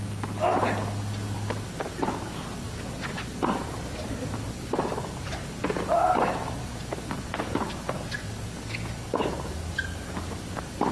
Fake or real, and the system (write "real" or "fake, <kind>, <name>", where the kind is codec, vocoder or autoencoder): real